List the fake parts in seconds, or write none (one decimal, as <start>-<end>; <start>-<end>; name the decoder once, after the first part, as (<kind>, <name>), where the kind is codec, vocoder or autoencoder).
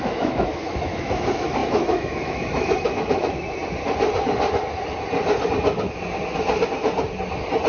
0.0-3.6 (autoencoder, DAC-VAE)